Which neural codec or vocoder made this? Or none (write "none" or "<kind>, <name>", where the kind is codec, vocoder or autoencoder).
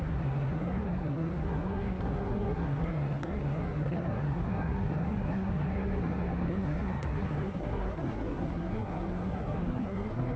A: codec, SNAC